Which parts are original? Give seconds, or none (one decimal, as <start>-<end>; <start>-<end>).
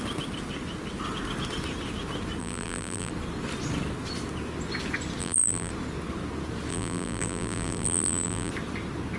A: 0.0-2.4; 3.1-5.2; 5.7-6.7; 8.5-9.2